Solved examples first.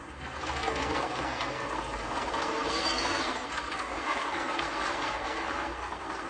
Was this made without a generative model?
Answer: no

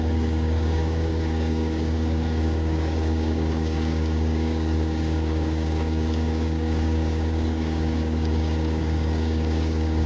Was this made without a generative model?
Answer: no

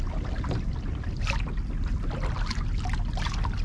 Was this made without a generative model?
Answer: yes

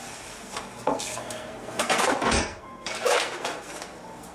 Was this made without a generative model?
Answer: no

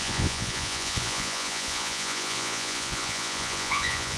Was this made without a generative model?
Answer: no